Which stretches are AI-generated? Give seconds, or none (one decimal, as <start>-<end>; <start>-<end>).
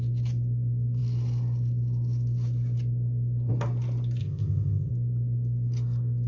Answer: 4.2-4.9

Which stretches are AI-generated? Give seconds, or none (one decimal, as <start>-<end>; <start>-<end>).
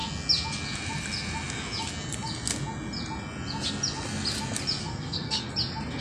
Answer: 4.8-5.4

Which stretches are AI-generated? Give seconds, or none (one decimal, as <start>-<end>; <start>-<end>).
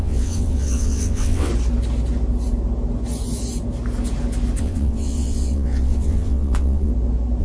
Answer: 0.0-1.5; 4.6-6.9